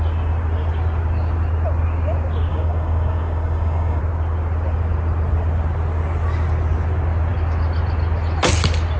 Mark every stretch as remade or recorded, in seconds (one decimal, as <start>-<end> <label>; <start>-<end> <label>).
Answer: 0.0-2.5 recorded; 2.5-4.0 remade; 4.0-9.0 recorded